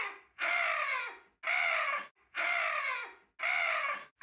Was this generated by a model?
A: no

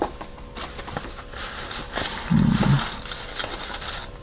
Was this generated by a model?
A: no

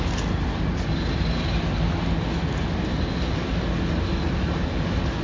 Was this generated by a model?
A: no